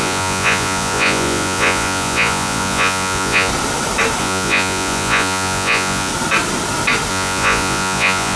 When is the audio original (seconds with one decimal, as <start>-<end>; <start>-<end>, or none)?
3.5-4.2; 6.1-7.1